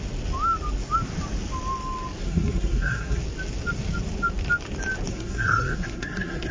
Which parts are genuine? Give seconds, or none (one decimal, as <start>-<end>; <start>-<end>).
0.0-2.2; 3.2-5.1